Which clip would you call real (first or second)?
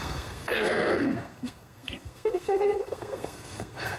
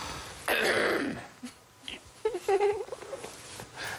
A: second